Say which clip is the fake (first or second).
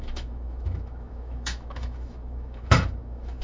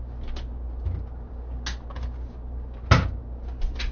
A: first